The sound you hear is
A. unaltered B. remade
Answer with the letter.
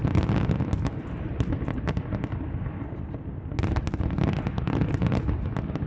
A